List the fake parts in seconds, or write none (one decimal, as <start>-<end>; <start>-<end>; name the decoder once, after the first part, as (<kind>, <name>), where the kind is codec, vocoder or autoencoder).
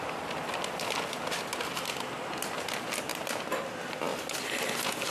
none